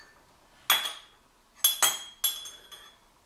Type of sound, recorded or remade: recorded